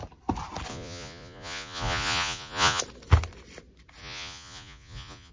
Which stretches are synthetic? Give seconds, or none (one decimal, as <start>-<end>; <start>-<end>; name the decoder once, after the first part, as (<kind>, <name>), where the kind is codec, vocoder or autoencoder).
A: 0.7-2.8 (vocoder, Vocos); 4.0-5.3